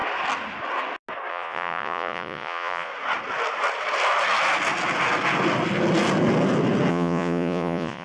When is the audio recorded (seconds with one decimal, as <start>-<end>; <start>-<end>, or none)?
0.0-1.3; 2.9-6.9